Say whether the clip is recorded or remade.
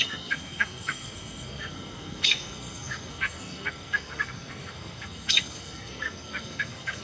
remade